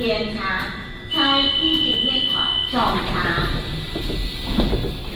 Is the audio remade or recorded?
recorded